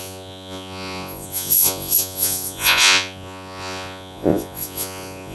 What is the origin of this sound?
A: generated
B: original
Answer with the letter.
A